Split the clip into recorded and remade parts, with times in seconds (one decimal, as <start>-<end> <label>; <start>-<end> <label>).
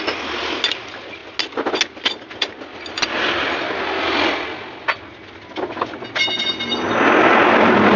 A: 0.0-8.0 recorded